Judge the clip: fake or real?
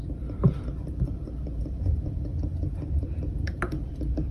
fake